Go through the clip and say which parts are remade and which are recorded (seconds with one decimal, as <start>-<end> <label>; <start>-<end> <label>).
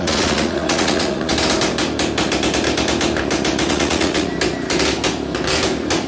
0.0-1.3 remade; 1.3-3.7 recorded; 3.7-4.3 remade; 4.3-6.1 recorded